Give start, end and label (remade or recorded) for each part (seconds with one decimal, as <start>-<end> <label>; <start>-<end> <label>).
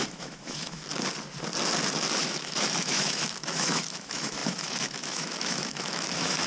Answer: 0.0-0.9 remade; 0.9-2.2 recorded; 2.2-6.5 remade